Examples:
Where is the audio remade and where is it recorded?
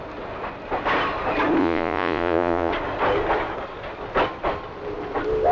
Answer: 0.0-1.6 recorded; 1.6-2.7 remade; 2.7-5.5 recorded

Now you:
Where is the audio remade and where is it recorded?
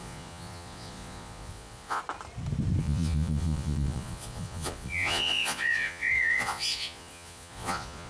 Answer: 0.0-2.0 remade; 2.0-2.8 recorded; 2.8-8.1 remade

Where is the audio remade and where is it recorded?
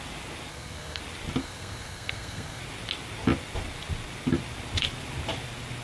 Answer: 0.0-0.5 recorded; 0.5-1.0 remade; 1.0-1.4 recorded; 1.4-2.6 remade; 2.6-5.8 recorded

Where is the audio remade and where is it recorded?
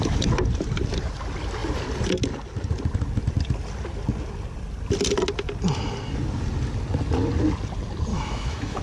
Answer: 0.0-8.1 recorded; 8.1-8.8 remade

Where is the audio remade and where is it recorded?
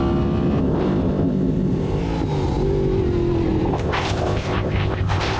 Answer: 0.0-0.6 recorded; 0.6-2.0 remade; 2.0-3.7 recorded; 3.7-5.4 remade